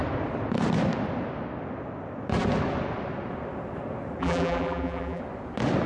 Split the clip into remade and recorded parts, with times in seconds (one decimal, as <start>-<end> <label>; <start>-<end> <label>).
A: 0.0-4.2 recorded; 4.2-5.2 remade; 5.2-5.9 recorded

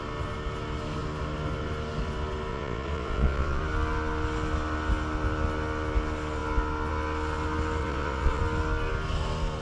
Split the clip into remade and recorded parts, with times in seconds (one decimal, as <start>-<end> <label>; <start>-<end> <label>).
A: 0.0-2.5 recorded; 2.5-3.6 remade; 3.6-7.8 recorded; 7.8-8.4 remade; 8.4-9.6 recorded

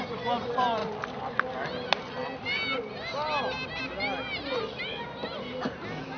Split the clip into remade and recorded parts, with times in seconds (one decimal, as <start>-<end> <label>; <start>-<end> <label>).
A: 0.0-6.2 recorded

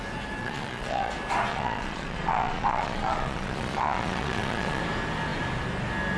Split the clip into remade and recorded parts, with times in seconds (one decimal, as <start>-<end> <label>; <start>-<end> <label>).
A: 0.0-0.4 recorded; 0.4-1.1 remade; 1.1-1.5 recorded; 1.5-4.8 remade; 4.8-6.2 recorded